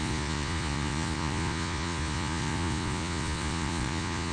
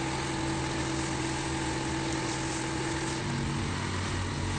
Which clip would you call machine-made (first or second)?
first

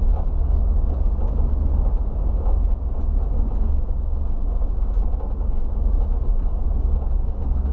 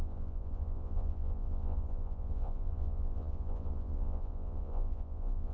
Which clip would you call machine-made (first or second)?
second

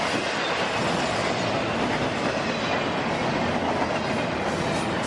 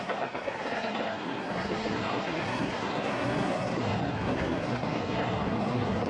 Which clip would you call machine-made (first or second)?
second